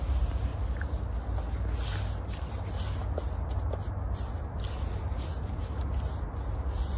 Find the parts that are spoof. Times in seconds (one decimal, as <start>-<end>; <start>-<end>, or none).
none

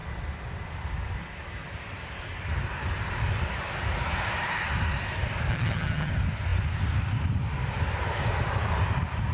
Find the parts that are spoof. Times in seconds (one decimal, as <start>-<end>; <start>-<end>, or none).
5.5-6.1

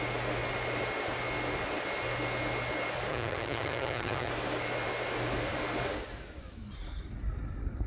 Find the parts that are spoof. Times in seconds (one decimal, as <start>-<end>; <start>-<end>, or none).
3.1-4.3

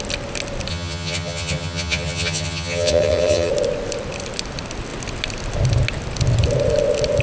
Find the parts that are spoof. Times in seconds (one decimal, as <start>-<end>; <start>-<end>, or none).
0.7-3.5

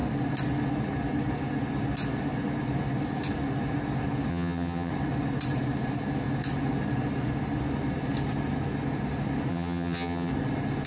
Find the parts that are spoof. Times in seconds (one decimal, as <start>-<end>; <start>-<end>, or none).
4.3-4.9; 9.5-10.3

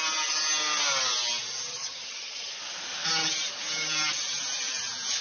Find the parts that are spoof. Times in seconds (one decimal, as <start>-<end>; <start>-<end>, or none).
1.7-2.5

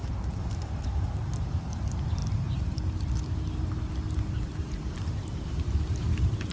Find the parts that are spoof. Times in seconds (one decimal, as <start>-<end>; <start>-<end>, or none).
none

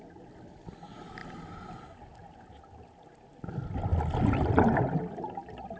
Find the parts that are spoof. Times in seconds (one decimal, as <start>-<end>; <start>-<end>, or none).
none